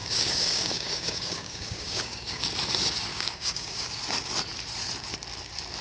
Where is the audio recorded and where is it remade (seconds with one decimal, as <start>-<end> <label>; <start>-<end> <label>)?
0.0-2.5 remade; 2.5-3.1 recorded; 3.1-4.0 remade; 4.0-5.8 recorded